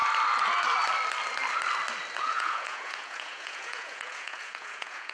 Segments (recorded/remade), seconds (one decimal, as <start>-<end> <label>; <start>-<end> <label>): 0.0-2.2 recorded; 2.2-5.1 remade